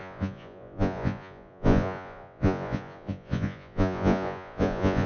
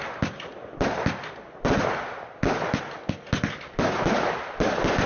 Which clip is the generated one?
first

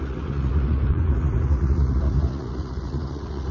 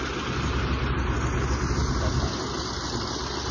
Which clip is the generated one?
first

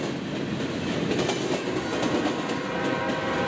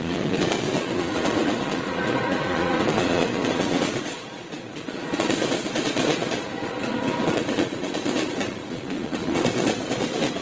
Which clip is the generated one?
second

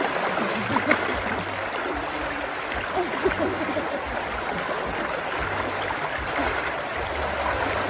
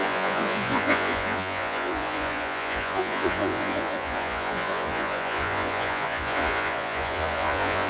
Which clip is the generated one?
second